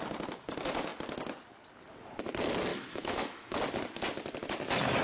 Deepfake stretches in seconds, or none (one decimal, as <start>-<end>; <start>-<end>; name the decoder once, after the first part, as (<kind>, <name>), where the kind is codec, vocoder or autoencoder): 2.7-3.6 (autoencoder, DAC-VAE)